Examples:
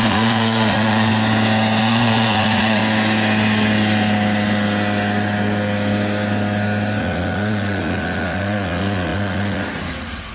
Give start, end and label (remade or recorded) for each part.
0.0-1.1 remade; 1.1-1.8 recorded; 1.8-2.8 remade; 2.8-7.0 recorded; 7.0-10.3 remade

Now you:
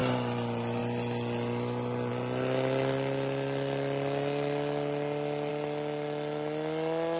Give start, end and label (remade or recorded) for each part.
0.0-7.2 recorded

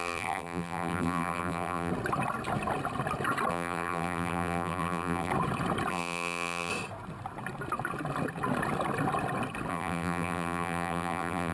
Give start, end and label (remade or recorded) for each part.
0.0-1.9 remade; 1.9-3.5 recorded; 3.5-5.3 remade; 5.3-5.9 recorded; 5.9-6.7 remade; 6.7-9.7 recorded; 9.7-11.5 remade

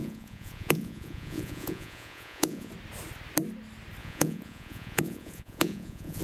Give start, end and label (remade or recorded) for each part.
0.0-2.7 remade; 2.7-4.0 recorded; 4.0-6.2 remade